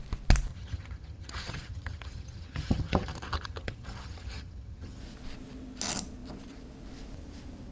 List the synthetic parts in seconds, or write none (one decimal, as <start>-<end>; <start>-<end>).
0.5-5.0